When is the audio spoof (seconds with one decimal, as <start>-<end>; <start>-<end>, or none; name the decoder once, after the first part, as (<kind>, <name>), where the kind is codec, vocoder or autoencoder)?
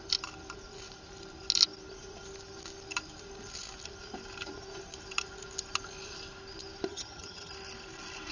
6.9-7.5 (vocoder, HiFi-GAN)